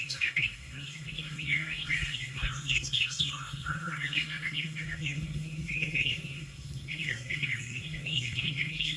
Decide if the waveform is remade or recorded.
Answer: remade